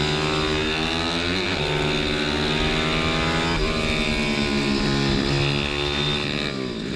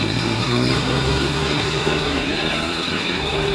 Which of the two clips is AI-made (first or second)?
second